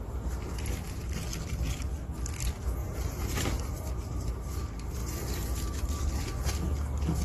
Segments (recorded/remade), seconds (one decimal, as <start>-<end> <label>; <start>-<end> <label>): 0.0-2.8 recorded; 2.8-4.6 remade; 4.6-7.2 recorded